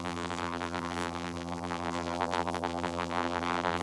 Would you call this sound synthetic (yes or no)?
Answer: yes